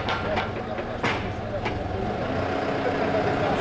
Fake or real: real